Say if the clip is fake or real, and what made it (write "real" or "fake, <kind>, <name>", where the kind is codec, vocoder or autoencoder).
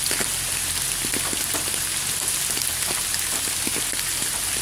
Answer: real